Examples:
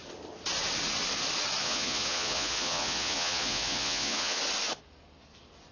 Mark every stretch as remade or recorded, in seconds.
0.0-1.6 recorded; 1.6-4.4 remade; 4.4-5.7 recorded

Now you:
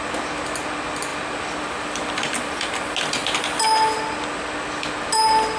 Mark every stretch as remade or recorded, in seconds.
0.0-1.1 recorded; 1.1-2.7 remade; 2.7-5.6 recorded

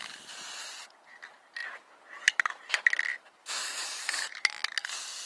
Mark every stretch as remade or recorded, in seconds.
0.0-3.4 recorded; 3.4-4.3 remade; 4.3-5.3 recorded

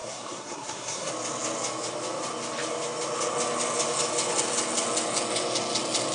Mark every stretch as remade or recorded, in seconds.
0.0-1.1 remade; 1.1-6.1 recorded

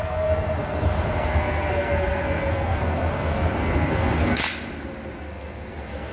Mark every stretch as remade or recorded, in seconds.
0.0-4.4 remade; 4.4-5.2 recorded; 5.2-6.1 remade

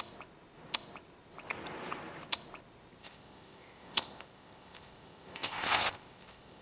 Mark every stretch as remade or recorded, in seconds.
0.0-3.0 recorded; 3.0-6.6 remade

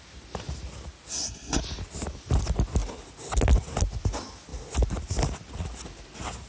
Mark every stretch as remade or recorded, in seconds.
0.0-1.1 recorded; 1.1-1.6 remade; 1.6-6.5 recorded